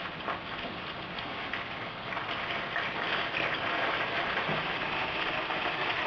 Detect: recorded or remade recorded